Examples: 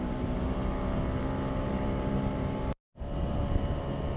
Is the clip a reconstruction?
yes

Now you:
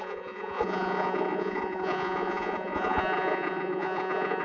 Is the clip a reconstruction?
yes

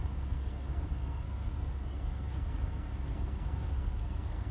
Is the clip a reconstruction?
yes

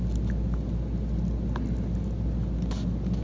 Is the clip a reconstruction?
no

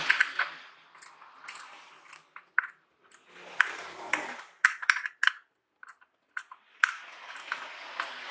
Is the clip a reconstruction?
no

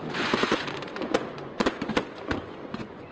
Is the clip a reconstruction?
yes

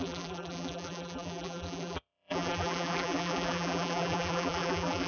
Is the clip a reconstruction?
yes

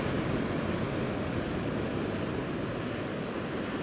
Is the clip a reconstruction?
no